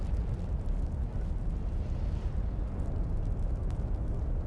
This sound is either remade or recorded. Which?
recorded